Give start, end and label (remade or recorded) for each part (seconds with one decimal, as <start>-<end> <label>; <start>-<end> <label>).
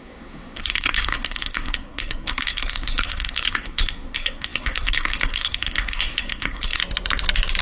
0.0-6.8 remade; 6.8-7.6 recorded